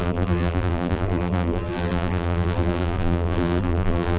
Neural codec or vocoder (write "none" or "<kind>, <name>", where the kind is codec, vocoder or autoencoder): vocoder, BigVGAN v2